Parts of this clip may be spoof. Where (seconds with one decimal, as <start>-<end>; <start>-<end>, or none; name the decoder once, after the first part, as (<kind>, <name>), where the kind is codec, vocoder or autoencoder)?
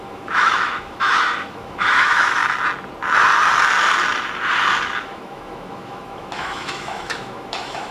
0.0-2.4 (autoencoder, DAC-VAE); 5.0-7.9